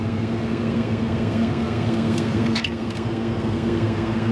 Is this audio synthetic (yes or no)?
yes